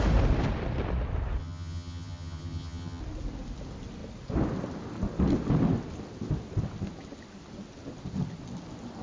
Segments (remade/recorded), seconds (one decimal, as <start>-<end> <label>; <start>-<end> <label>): 0.0-1.4 recorded; 1.4-3.0 remade; 3.0-9.0 recorded